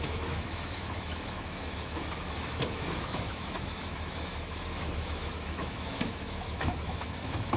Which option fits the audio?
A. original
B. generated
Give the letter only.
B